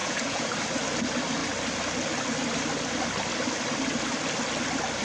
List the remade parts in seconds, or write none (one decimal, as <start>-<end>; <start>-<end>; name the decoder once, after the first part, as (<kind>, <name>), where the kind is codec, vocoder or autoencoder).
0.0-0.5 (vocoder, Vocos)